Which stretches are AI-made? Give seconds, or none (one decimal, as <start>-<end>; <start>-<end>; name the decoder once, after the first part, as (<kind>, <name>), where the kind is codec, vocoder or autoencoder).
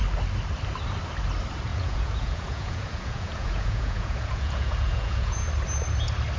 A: 1.7-5.5 (vocoder, Vocos)